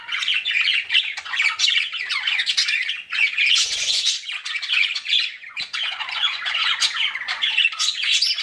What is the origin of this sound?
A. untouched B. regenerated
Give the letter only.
B